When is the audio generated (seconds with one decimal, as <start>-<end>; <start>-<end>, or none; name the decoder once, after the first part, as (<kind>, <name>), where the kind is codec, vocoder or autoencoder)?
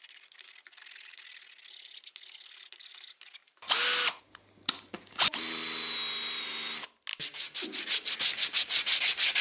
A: none